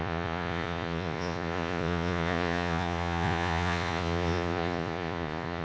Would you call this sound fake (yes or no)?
yes